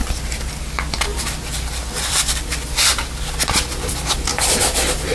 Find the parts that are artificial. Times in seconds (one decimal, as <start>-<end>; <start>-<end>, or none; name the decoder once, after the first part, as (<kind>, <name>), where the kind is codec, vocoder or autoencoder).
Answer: 1.4-2.9 (vocoder, BigVGAN v2); 3.7-5.1